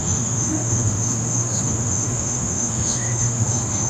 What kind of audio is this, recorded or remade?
remade